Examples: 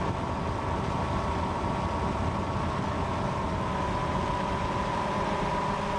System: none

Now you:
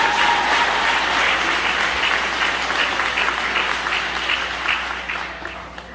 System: none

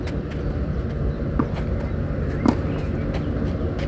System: none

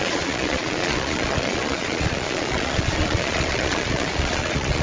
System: vocoder, Vocos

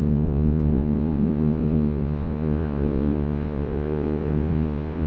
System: vocoder, Vocos